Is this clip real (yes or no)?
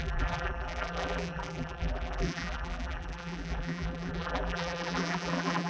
no